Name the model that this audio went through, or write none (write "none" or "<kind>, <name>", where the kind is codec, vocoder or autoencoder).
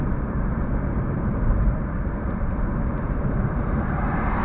vocoder, BigVGAN v2